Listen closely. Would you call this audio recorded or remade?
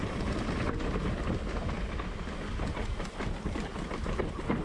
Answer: recorded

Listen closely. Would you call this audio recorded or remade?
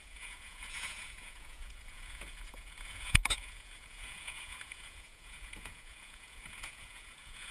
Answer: remade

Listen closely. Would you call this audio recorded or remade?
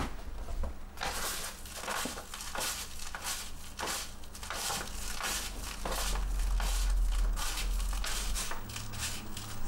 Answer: recorded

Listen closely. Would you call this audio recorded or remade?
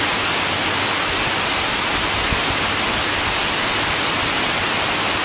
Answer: recorded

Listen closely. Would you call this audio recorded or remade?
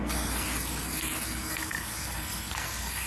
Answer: remade